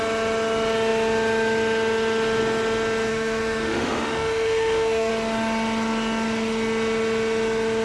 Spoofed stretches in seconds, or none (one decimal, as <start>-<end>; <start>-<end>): 3.1-5.1